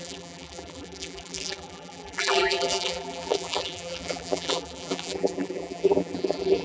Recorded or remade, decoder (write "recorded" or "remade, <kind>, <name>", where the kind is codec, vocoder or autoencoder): remade, vocoder, BigVGAN v2